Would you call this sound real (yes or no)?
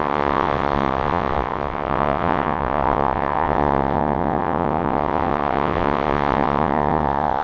no